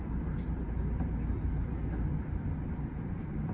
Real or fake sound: fake